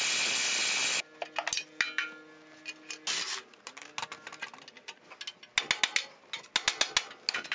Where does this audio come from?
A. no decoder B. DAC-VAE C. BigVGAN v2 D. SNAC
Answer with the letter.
A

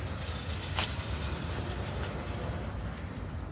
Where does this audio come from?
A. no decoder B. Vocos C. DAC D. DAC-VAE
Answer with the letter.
A